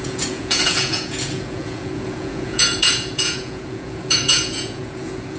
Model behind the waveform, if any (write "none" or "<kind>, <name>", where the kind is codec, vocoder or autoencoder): vocoder, Vocos